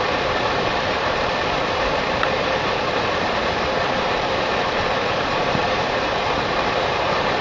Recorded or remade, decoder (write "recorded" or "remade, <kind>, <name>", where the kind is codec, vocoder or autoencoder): remade, vocoder, BigVGAN v2